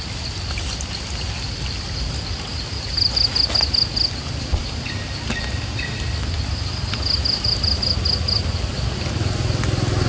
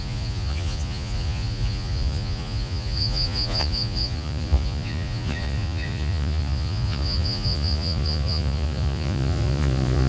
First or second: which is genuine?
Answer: first